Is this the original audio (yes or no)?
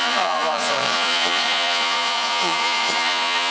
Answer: no